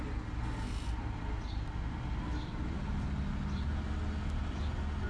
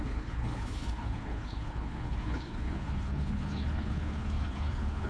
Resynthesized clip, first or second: second